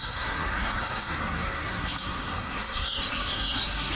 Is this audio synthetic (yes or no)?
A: yes